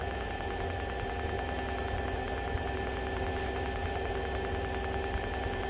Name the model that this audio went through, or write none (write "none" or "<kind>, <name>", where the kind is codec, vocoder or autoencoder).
none